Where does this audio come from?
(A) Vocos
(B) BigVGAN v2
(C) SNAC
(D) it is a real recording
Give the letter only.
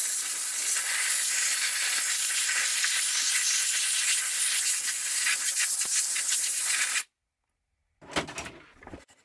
D